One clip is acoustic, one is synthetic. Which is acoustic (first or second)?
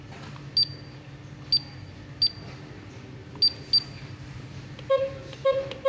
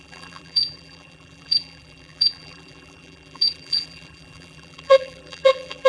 first